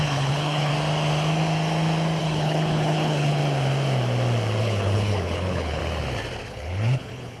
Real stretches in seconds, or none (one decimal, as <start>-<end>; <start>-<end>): 0.7-2.2; 3.4-4.6; 5.8-6.5